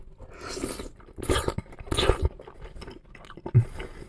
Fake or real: real